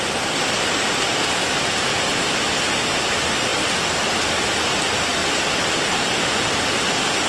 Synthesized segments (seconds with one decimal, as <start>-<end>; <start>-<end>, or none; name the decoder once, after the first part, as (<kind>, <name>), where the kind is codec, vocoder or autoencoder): none